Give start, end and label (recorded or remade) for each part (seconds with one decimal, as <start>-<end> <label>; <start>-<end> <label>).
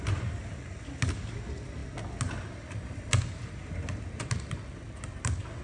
0.0-5.6 recorded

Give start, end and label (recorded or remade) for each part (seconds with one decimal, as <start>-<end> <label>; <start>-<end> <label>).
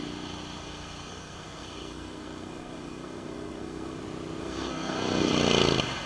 0.0-0.6 recorded; 0.6-4.0 remade; 4.0-4.4 recorded; 4.4-5.3 remade; 5.3-6.1 recorded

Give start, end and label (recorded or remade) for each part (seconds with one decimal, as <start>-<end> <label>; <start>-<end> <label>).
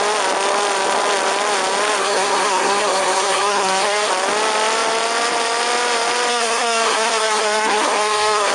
0.0-2.0 recorded; 2.0-4.1 remade; 4.1-6.3 recorded; 6.3-8.5 remade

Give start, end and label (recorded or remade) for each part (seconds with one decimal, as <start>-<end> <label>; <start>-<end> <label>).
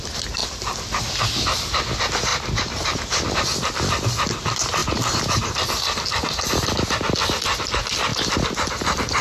0.0-0.4 recorded; 0.4-1.0 remade; 1.0-9.2 recorded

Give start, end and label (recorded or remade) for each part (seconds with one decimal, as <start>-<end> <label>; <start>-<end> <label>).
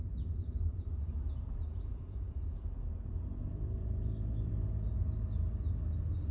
0.0-0.7 recorded; 0.7-4.5 remade; 4.5-6.3 recorded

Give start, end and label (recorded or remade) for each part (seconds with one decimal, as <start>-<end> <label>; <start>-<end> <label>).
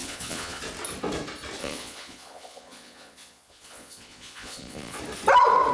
0.0-0.6 remade; 0.6-1.6 recorded; 1.6-5.0 remade; 5.0-5.7 recorded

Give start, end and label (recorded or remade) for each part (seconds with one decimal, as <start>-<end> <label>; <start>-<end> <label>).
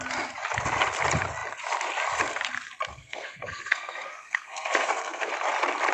0.0-2.9 recorded; 2.9-5.3 remade; 5.3-5.9 recorded